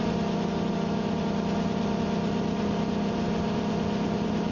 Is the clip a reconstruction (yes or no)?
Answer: no